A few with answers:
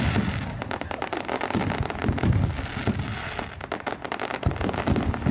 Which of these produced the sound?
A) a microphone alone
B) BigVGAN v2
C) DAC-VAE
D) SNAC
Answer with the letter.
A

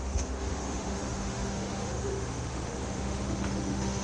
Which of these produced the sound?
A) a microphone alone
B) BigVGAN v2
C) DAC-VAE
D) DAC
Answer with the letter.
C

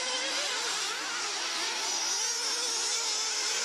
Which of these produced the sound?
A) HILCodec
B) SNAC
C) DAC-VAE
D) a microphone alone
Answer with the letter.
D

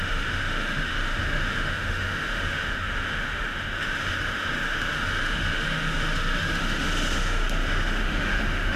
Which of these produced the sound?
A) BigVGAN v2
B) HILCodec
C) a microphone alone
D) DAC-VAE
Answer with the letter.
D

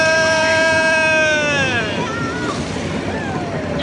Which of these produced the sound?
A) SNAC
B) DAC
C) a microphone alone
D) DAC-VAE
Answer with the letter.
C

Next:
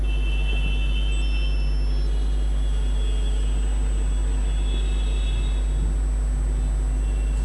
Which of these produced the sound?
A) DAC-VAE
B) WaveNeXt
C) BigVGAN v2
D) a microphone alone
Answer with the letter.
D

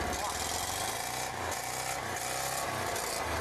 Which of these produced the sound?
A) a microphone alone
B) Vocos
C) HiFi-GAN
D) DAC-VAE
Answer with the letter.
A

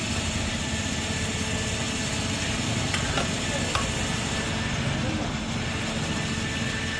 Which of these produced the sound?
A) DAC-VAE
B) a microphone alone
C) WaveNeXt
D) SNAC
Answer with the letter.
B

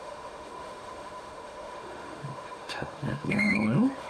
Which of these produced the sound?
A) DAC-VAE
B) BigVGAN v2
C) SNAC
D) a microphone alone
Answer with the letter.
A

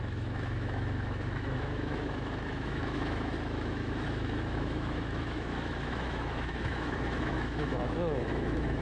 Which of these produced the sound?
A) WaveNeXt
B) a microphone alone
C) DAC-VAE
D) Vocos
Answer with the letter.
C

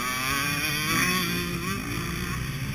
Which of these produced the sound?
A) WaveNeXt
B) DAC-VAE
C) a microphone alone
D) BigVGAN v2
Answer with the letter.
C